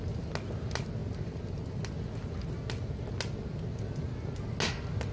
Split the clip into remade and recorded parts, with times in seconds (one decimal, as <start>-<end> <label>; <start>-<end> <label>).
0.0-5.1 recorded